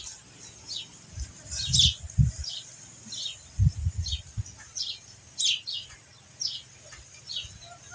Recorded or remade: recorded